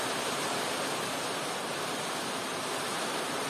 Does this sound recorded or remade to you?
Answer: recorded